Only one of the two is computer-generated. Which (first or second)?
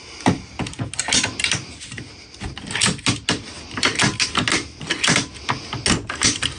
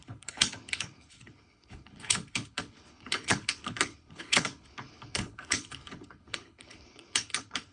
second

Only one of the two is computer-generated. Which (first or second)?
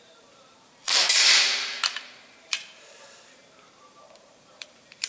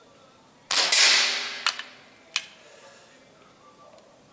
first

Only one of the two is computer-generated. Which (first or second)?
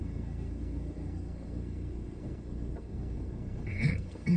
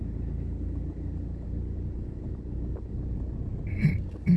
first